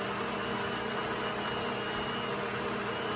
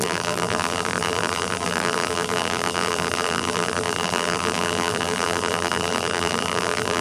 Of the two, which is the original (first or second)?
first